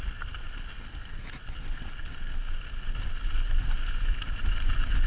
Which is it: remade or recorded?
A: recorded